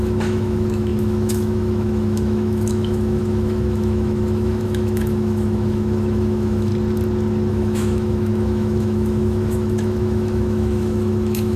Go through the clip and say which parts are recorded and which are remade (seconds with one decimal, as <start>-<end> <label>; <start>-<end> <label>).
0.0-6.7 remade; 6.7-7.5 recorded; 7.5-11.6 remade